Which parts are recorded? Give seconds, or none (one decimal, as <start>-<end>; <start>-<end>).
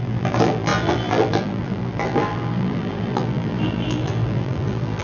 none